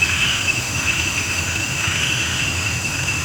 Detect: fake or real fake